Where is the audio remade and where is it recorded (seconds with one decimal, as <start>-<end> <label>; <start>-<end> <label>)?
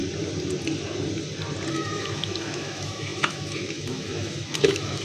0.0-1.7 recorded; 1.7-5.0 remade